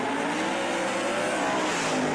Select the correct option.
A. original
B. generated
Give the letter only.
A